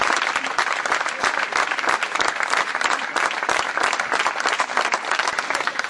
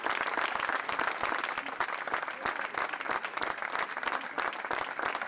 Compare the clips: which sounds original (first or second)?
second